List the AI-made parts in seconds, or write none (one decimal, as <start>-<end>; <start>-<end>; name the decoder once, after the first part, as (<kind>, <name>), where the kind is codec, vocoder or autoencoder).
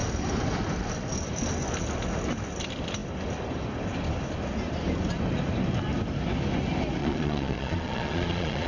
7.0-8.7 (vocoder, Vocos)